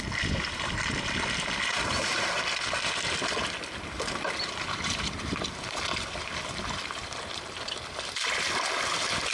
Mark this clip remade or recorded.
remade